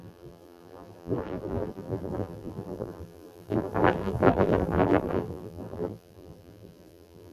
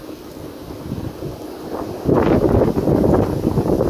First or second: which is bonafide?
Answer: second